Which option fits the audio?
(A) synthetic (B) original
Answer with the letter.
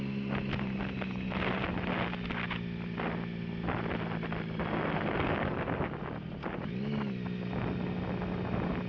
B